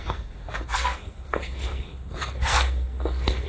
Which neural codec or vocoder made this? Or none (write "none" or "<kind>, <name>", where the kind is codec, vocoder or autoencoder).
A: codec, SNAC